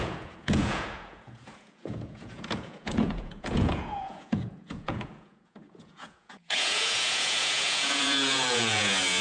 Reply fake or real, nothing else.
fake